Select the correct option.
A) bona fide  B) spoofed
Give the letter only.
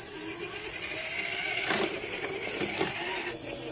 A